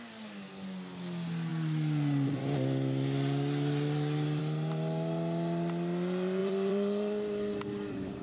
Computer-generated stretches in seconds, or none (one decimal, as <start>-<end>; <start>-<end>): 6.4-8.2